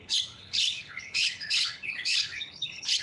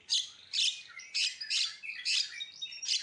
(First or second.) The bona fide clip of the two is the second